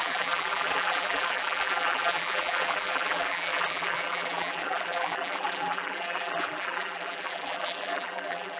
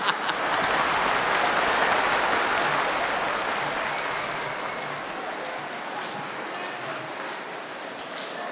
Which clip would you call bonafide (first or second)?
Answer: second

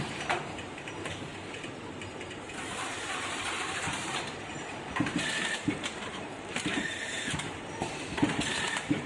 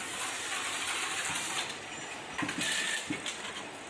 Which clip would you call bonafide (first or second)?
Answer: second